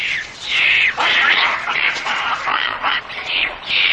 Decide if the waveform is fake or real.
fake